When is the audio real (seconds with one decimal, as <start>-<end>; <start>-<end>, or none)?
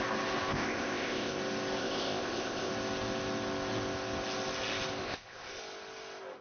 0.0-0.5; 1.4-1.8; 2.7-5.0; 5.6-6.4